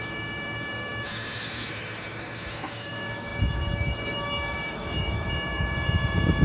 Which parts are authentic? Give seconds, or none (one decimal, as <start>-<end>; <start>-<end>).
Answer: none